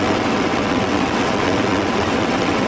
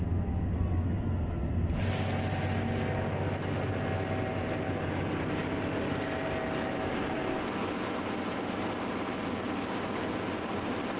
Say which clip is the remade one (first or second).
first